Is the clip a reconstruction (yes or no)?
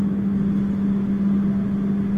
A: no